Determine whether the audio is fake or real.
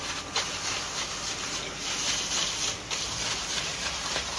real